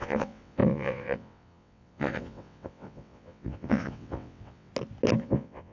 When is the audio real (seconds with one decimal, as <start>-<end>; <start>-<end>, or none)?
4.7-5.2

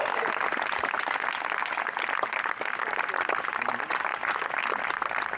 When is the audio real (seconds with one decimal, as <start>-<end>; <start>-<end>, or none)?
0.0-5.4